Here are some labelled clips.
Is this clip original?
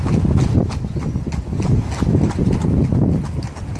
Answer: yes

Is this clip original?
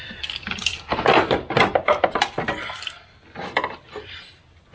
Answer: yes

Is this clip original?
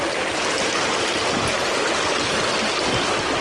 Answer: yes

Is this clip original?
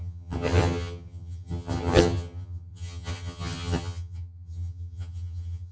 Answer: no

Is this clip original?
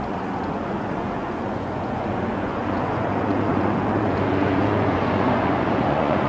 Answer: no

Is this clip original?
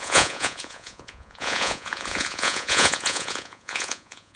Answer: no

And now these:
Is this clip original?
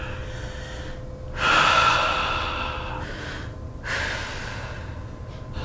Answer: yes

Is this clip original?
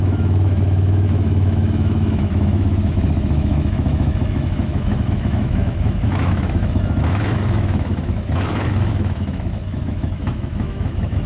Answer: no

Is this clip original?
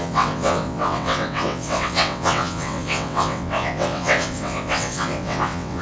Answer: no